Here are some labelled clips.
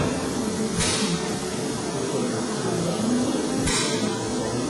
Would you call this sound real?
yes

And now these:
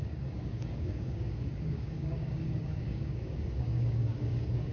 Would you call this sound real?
no